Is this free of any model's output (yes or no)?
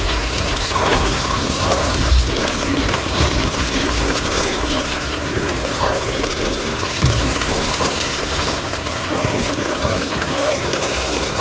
no